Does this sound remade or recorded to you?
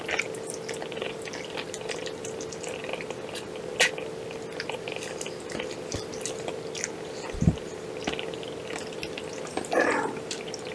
recorded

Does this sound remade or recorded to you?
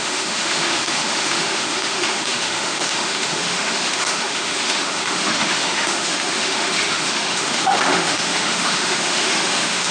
remade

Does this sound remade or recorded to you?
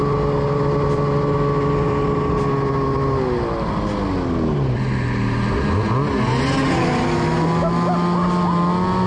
recorded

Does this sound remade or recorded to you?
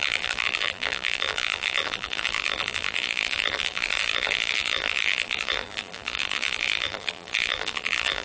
remade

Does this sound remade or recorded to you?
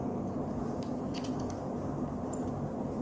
recorded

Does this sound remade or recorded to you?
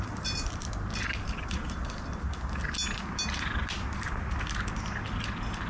recorded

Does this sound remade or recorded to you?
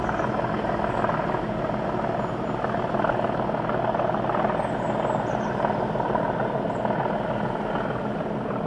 recorded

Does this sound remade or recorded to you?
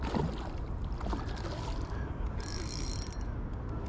recorded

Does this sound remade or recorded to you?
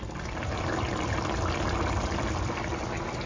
recorded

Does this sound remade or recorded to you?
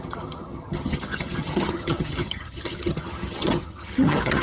remade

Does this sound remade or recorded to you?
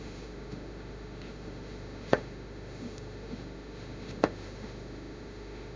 remade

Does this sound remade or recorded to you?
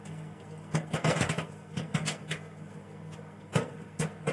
remade